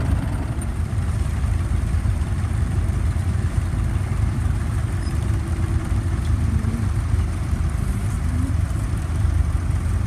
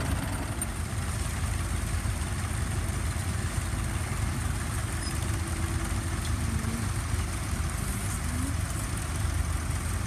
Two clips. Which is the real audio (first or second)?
second